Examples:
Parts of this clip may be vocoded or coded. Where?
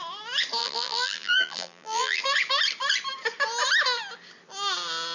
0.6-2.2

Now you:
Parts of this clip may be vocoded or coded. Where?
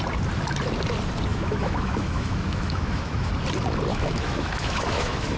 1.3-3.3; 3.9-5.4